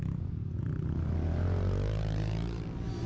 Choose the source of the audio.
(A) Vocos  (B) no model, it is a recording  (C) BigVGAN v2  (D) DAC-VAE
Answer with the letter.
B